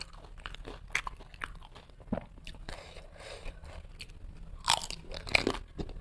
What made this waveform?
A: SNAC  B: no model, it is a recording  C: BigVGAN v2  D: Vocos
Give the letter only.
B